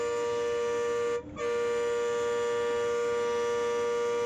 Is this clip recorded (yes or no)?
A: yes